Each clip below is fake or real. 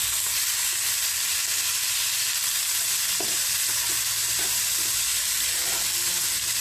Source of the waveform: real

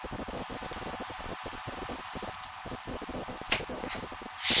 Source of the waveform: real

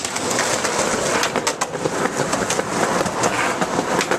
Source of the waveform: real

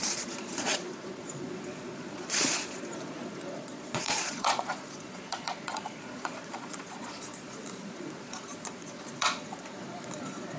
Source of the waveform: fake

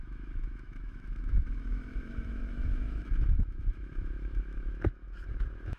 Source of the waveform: fake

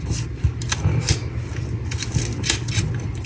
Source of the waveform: real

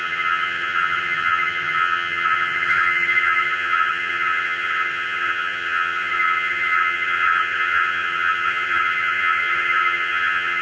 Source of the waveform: fake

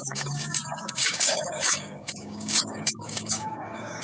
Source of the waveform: fake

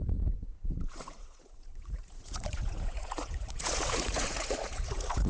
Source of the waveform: fake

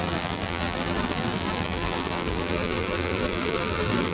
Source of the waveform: fake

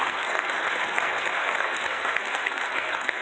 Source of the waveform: fake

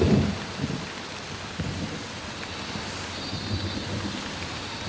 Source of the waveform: real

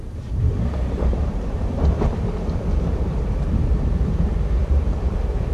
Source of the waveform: fake